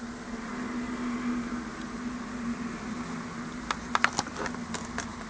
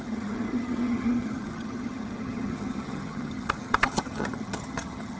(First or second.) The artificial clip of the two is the second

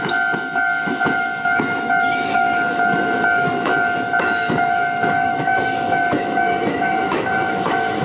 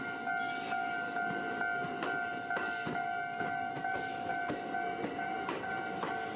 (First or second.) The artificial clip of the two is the first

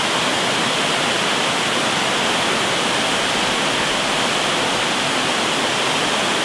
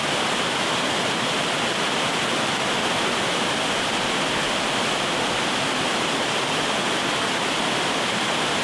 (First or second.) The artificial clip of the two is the second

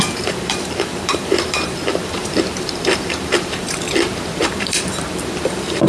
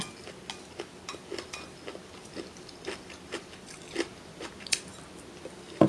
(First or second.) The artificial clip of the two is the first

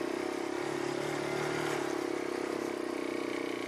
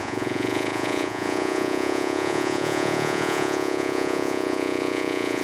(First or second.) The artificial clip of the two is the second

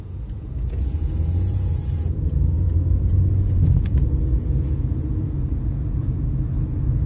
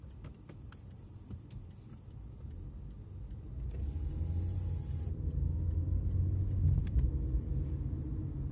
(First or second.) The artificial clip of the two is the first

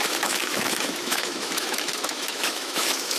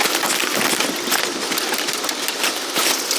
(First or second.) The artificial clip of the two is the first